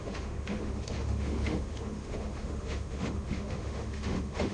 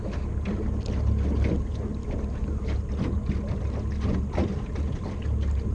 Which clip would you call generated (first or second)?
first